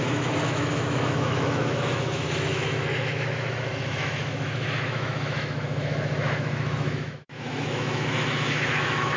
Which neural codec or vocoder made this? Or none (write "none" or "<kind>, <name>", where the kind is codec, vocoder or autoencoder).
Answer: autoencoder, DAC-VAE